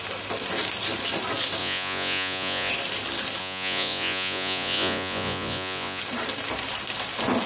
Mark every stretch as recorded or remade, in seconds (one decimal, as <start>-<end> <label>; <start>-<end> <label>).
0.0-1.6 recorded; 1.6-2.7 remade; 2.7-3.4 recorded; 3.4-6.0 remade; 6.0-7.5 recorded